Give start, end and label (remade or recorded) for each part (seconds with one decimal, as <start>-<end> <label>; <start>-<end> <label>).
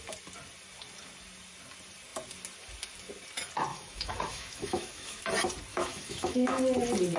0.0-3.7 recorded; 3.7-5.2 remade; 5.2-5.7 recorded; 5.7-6.6 remade; 6.6-7.2 recorded